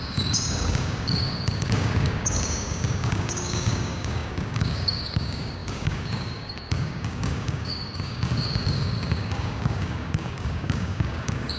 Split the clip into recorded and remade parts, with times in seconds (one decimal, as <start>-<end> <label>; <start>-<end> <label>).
0.0-11.6 remade